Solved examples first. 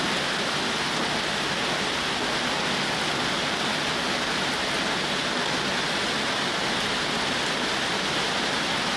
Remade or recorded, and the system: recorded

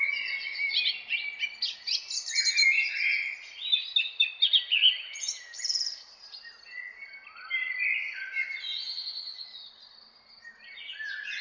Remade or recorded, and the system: recorded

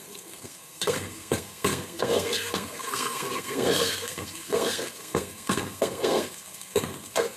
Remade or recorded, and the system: remade, codec, SNAC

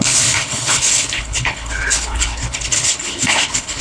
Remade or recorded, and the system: remade, codec, HILCodec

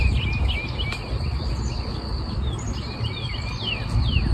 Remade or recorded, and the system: recorded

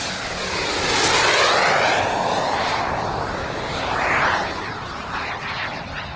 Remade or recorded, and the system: recorded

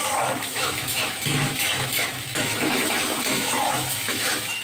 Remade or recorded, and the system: remade, autoencoder, DAC-VAE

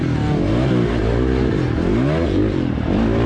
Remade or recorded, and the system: recorded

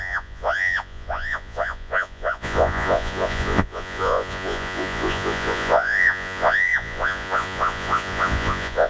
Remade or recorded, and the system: remade, vocoder, Vocos